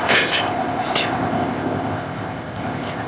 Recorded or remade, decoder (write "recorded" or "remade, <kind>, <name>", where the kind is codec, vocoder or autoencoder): remade, codec, ZipCodec